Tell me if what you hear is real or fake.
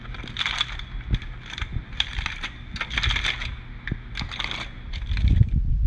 real